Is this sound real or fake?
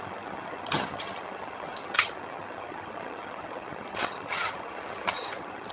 fake